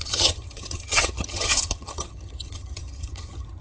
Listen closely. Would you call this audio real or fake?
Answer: fake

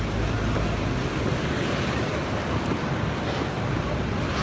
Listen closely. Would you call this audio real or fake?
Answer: real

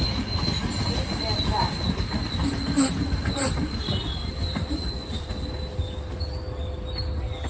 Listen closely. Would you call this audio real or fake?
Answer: real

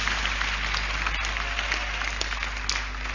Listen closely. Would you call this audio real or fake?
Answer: real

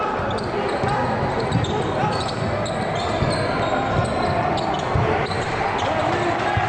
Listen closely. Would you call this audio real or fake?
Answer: real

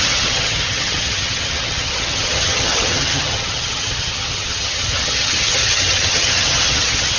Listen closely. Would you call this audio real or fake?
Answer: fake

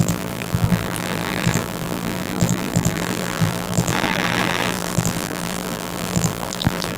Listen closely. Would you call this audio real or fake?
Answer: fake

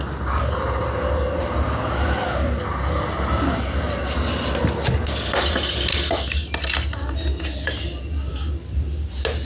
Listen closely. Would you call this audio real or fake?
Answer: real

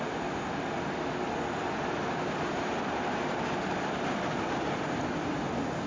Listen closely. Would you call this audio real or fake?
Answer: real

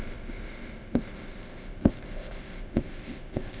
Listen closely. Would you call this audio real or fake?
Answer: fake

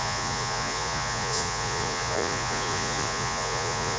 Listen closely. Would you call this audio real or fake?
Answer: fake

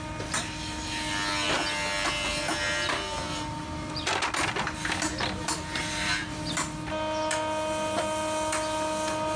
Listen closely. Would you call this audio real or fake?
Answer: real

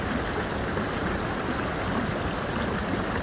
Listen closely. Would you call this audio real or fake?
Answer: real